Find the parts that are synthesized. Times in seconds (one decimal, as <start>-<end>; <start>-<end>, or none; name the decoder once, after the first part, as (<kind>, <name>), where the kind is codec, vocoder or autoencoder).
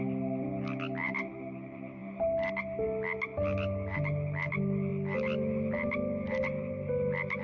none